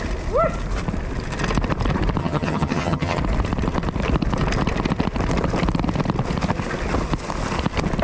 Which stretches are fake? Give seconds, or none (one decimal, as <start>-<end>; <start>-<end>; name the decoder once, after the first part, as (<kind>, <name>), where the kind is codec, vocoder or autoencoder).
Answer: 2.2-3.2 (vocoder, HiFi-GAN)